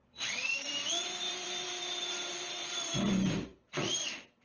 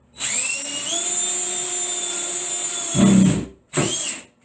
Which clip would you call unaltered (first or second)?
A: second